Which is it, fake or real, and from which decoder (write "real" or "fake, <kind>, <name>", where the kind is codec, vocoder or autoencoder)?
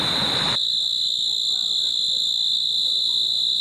real